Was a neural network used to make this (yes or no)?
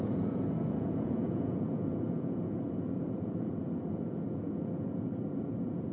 yes